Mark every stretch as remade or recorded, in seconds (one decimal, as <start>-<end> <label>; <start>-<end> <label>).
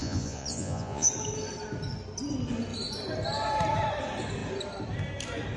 0.0-1.1 remade; 1.1-5.6 recorded